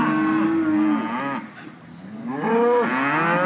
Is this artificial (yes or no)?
no